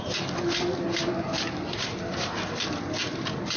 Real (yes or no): yes